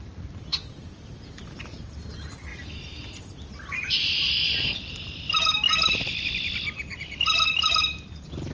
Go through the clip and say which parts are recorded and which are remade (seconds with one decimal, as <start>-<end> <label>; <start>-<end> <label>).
0.0-0.5 recorded; 0.5-1.0 remade; 1.0-2.5 recorded; 2.5-5.3 remade; 5.3-8.5 recorded